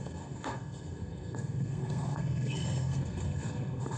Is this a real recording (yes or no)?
no